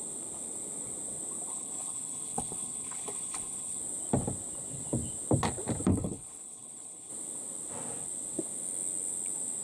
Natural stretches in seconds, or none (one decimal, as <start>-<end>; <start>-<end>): 0.0-1.5; 3.8-5.9; 7.1-9.6